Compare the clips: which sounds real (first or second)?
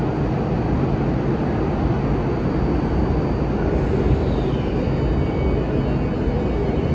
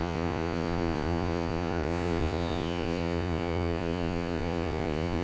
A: first